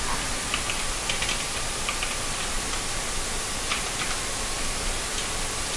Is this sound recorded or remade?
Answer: recorded